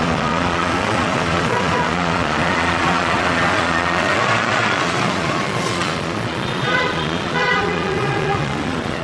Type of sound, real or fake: fake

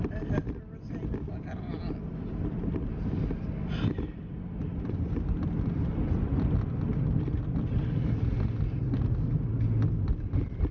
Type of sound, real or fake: real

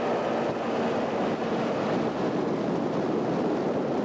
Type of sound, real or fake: real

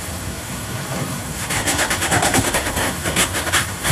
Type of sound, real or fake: fake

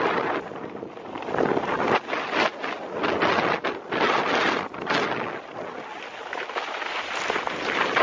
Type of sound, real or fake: real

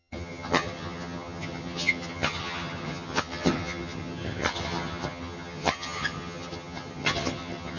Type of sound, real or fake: fake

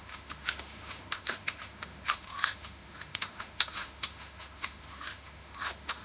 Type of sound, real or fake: fake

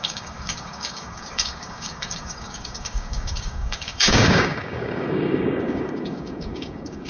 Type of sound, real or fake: fake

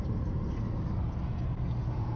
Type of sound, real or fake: real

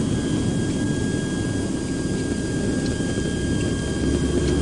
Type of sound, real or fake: real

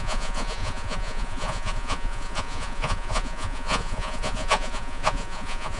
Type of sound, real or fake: fake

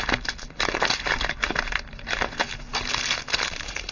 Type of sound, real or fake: real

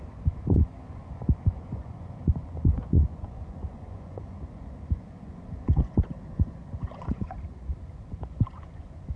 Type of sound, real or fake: fake